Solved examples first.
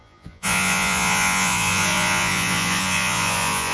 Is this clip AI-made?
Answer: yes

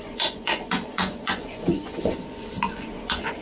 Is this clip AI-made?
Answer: yes